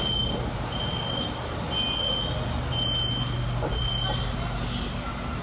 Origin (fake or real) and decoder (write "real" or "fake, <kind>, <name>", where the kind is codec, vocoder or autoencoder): real